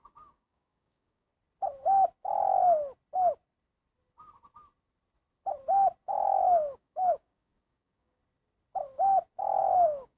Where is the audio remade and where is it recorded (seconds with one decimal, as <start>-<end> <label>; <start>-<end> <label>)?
0.0-1.3 remade; 1.3-6.1 recorded; 6.1-8.2 remade; 8.2-9.6 recorded; 9.6-10.2 remade